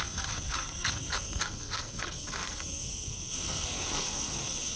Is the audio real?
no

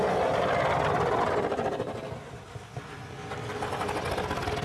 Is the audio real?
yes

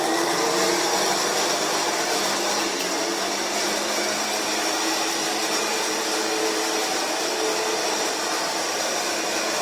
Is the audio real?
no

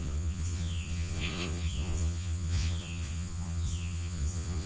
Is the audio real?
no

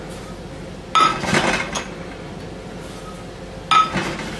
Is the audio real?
yes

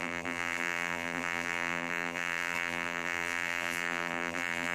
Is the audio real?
no